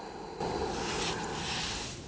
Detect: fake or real real